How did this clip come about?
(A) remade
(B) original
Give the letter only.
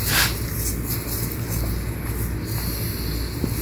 B